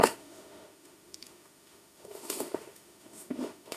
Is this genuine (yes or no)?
no